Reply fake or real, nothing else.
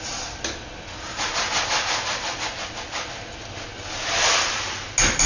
real